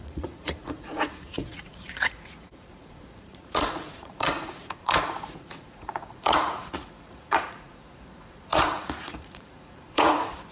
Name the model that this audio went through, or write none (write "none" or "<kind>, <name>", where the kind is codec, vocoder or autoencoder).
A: vocoder, Vocos